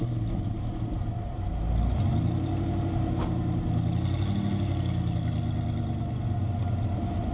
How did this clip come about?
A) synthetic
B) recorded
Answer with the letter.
B